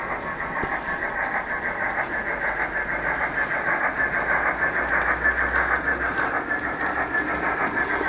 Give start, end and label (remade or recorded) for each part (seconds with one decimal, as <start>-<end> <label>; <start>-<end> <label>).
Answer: 0.0-8.1 recorded